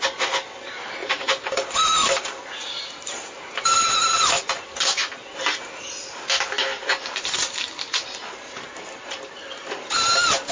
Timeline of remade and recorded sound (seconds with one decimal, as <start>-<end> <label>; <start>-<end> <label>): 0.0-1.0 recorded; 1.0-3.8 remade; 3.8-6.7 recorded; 6.7-8.2 remade; 8.2-10.5 recorded